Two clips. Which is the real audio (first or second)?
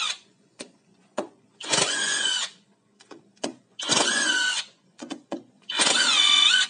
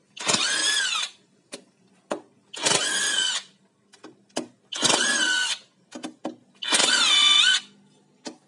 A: second